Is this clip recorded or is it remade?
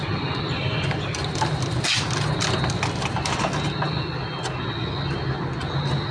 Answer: recorded